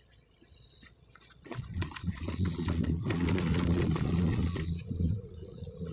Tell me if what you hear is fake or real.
fake